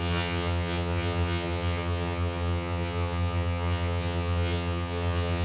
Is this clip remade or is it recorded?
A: remade